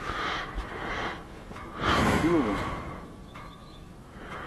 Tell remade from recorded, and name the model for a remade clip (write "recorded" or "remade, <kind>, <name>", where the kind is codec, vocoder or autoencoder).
remade, autoencoder, DAC-VAE